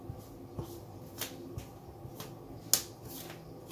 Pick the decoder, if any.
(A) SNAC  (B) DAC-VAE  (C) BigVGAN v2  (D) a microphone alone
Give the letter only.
D